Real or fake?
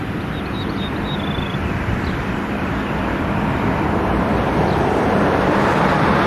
real